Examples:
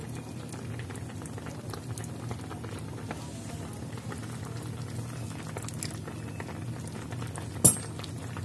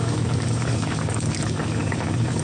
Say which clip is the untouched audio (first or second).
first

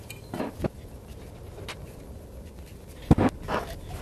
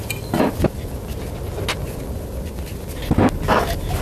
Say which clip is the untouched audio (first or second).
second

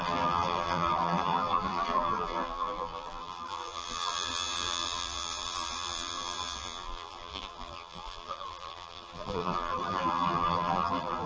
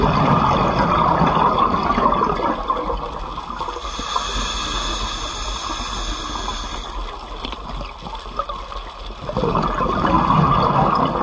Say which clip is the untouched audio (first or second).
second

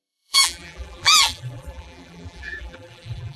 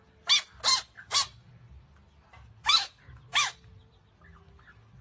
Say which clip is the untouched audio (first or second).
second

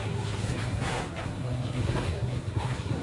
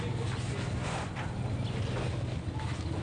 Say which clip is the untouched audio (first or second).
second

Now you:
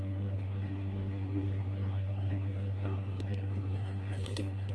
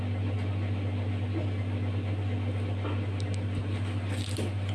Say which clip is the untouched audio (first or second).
second